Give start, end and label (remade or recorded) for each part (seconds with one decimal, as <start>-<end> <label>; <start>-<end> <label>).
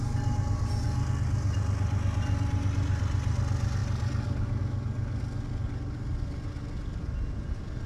0.0-7.9 recorded